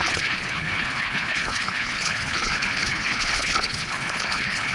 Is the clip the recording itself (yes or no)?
no